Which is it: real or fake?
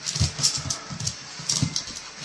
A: real